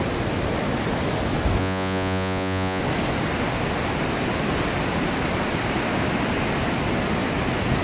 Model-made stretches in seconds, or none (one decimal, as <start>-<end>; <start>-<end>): 1.6-2.8